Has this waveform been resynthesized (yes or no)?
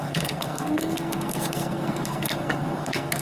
yes